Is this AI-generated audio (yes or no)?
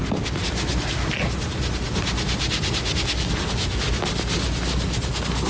no